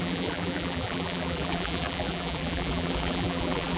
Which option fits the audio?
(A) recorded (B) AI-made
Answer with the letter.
B